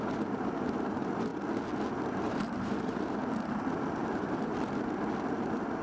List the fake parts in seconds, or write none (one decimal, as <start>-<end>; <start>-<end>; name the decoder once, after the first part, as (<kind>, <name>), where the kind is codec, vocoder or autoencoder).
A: 0.0-1.3 (vocoder, BigVGAN v2); 2.1-3.2; 4.1-4.5; 5.3-5.8